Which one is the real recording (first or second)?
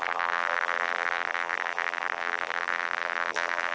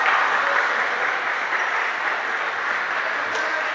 second